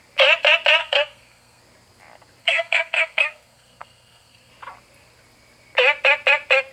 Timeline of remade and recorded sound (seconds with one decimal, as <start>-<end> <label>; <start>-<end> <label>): 0.0-0.8 recorded; 0.8-1.6 remade; 1.6-2.4 recorded; 2.4-4.5 remade; 4.5-6.7 recorded

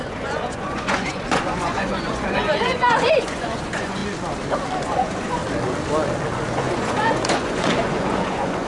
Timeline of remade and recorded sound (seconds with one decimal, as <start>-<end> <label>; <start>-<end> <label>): 0.0-4.0 remade; 4.0-4.8 recorded; 4.8-5.4 remade; 5.4-6.5 recorded; 6.5-8.7 remade

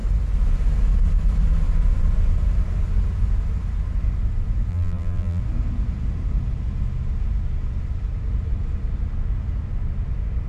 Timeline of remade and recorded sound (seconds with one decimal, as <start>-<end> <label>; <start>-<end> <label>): 0.0-4.7 recorded; 4.7-5.4 remade; 5.4-10.5 recorded

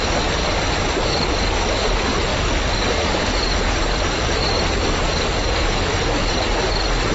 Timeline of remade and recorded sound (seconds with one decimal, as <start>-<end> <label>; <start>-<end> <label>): 0.0-7.1 recorded

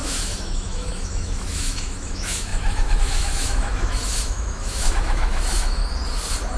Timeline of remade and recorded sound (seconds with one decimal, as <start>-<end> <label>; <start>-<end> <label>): 0.0-5.8 remade; 5.8-6.6 recorded

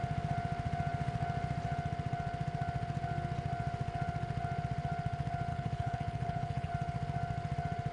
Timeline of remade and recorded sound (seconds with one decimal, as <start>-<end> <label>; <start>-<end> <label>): 0.0-5.5 recorded; 5.5-6.7 remade; 6.7-7.9 recorded

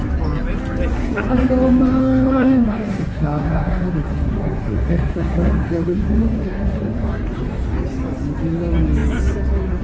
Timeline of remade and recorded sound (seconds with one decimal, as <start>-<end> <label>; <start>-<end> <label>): 0.0-0.9 recorded; 0.9-1.5 remade; 1.5-2.0 recorded; 2.0-7.1 remade; 7.1-9.8 recorded

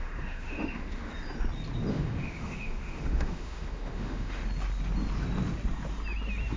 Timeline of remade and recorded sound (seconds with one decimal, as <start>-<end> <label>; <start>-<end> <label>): 0.0-1.1 remade; 1.1-1.9 recorded; 1.9-4.4 remade; 4.4-6.6 recorded